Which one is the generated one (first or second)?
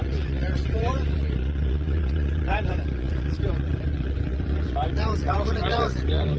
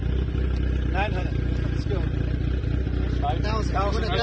first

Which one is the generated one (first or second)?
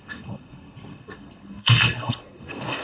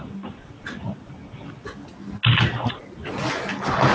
first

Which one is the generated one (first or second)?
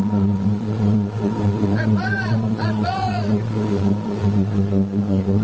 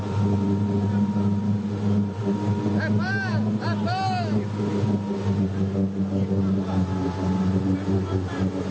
first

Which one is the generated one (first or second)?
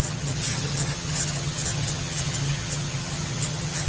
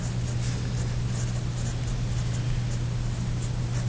first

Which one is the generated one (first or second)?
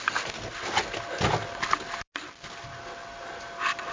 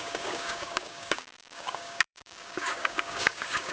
second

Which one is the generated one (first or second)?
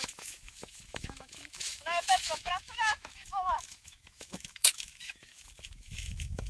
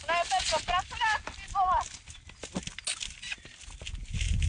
first